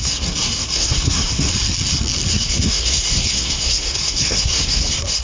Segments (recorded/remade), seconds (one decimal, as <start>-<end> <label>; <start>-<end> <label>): 0.0-1.5 remade; 1.5-2.3 recorded; 2.3-5.2 remade